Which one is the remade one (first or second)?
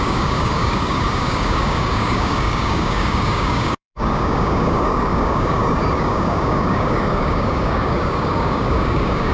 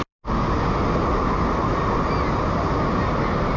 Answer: first